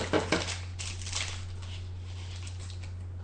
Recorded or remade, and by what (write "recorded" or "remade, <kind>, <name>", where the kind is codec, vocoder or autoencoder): recorded